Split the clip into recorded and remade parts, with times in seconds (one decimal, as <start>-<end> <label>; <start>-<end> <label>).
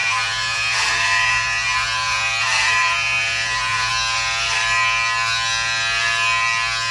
0.0-3.9 remade; 3.9-6.9 recorded